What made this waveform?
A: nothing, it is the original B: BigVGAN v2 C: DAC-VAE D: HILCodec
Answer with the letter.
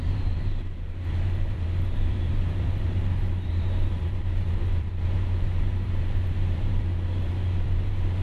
B